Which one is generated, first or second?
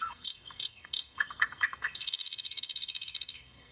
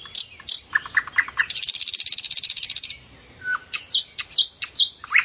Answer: first